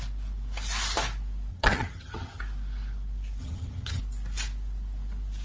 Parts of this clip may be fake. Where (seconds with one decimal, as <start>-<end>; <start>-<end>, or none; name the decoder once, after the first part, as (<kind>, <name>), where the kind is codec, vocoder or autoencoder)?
1.5-2.4 (vocoder, HiFi-GAN); 3.4-4.0

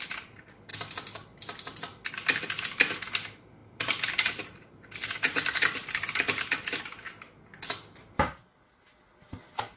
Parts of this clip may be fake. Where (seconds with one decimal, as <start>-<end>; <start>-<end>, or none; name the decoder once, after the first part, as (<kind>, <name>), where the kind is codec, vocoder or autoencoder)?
3.6-6.8 (vocoder, BigVGAN v2)